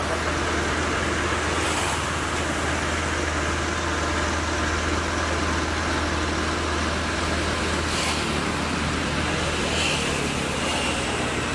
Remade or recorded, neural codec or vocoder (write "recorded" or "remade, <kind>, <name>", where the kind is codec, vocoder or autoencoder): recorded